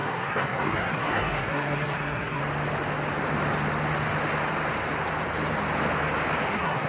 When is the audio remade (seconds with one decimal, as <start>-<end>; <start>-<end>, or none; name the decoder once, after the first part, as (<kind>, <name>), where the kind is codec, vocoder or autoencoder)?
0.0-2.4 (codec, SNAC); 6.5-6.9